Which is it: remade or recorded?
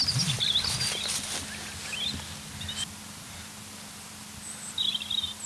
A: recorded